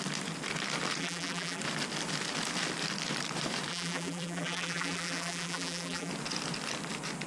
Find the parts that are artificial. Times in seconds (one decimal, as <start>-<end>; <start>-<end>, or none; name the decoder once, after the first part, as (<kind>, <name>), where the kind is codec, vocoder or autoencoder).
1.0-1.6 (vocoder, BigVGAN v2); 3.7-6.1